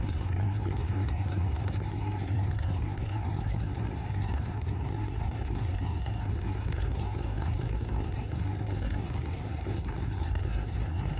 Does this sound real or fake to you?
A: fake